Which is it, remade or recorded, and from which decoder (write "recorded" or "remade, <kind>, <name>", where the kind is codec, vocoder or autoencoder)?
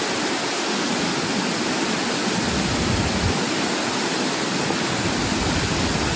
recorded